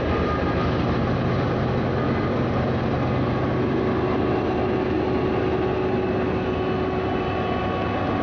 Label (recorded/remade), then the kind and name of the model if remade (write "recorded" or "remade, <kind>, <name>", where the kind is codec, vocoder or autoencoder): recorded